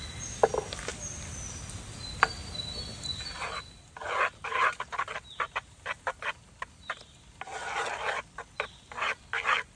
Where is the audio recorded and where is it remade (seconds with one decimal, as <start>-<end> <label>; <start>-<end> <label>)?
0.0-9.8 recorded